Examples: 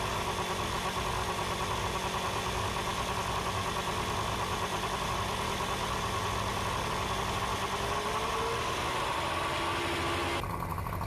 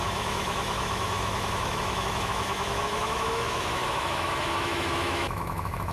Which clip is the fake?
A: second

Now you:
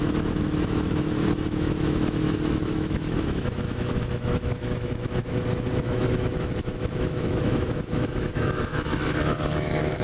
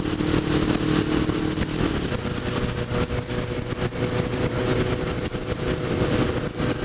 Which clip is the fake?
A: first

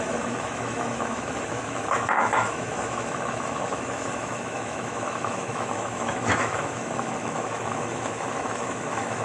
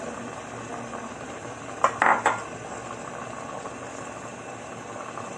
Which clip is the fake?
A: first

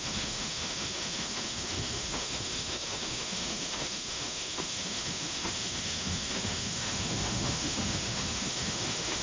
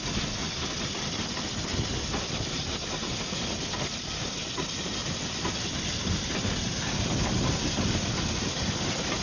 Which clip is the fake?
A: first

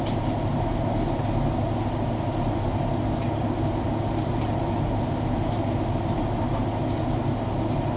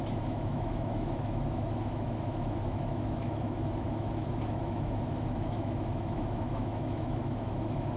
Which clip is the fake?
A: second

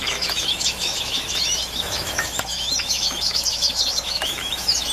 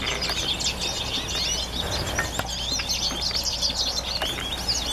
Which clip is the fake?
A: first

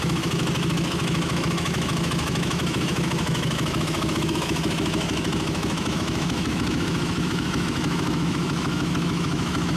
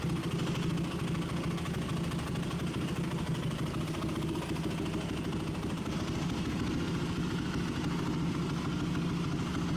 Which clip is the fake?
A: first